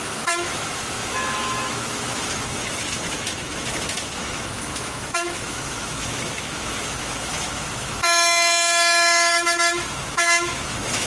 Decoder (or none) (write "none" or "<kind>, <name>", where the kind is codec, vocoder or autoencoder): autoencoder, DAC-VAE